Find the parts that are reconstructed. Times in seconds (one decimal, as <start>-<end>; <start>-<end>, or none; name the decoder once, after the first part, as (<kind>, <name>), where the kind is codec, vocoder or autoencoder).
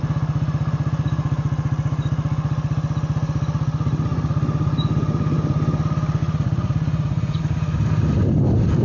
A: 6.2-7.4 (vocoder, Vocos)